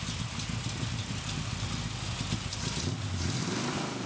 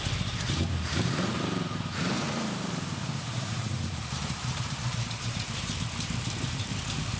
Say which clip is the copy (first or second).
second